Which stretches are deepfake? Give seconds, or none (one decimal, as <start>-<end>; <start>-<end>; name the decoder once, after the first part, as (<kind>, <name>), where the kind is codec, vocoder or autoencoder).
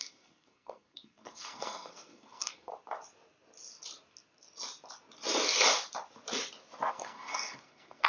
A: 0.0-2.7 (codec, SNAC); 6.9-8.1